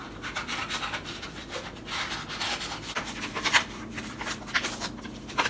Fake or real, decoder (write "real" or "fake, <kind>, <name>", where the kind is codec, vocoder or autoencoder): fake, vocoder, BigVGAN v2